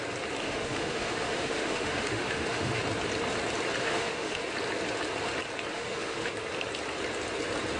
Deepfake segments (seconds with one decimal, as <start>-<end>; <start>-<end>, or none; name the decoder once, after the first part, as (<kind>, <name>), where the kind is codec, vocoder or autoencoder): 0.4-2.8 (autoencoder, DAC-VAE); 3.8-4.4; 5.7-6.3